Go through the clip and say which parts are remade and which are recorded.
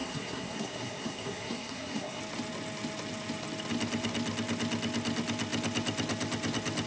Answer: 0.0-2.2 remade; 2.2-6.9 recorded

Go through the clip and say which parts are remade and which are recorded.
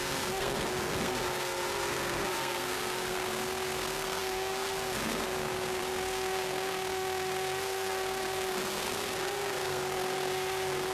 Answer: 0.0-10.9 remade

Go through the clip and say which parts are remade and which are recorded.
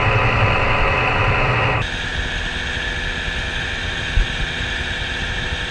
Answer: 0.0-5.7 recorded